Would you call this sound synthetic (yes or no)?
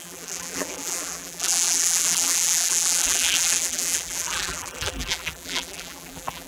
yes